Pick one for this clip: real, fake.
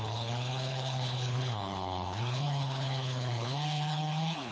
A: fake